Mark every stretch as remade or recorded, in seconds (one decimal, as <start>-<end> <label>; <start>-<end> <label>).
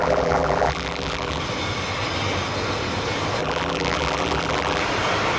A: 0.0-1.4 remade; 1.4-3.4 recorded; 3.4-4.8 remade; 4.8-5.4 recorded